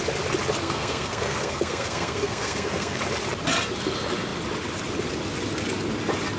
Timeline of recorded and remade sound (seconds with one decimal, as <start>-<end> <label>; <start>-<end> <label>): 0.0-0.6 recorded; 0.6-3.0 remade; 3.0-6.4 recorded